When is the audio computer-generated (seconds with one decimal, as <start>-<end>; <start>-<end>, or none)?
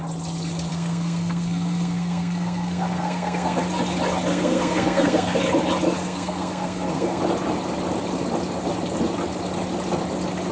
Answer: 0.7-3.6; 4.3-5.4; 6.0-7.2